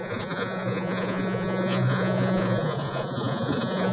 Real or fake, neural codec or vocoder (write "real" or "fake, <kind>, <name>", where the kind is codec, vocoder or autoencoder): fake, vocoder, Vocos